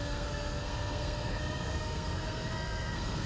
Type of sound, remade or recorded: remade